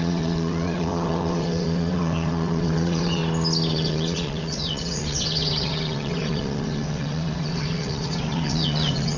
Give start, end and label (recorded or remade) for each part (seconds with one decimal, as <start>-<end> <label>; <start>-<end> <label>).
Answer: 0.0-3.2 remade; 3.2-3.7 recorded; 3.7-9.2 remade